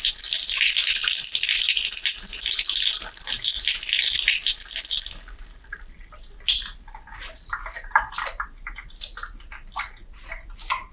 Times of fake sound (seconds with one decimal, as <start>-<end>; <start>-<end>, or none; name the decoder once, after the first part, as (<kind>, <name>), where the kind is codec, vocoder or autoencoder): 0.0-0.8 (vocoder, BigVGAN v2); 4.0-10.9

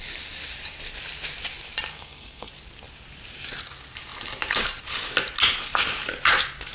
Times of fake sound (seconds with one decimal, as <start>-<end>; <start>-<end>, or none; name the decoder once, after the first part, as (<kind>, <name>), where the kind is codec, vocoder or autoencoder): 1.9-2.5 (codec, SNAC)